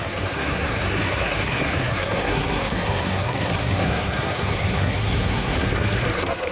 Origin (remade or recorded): remade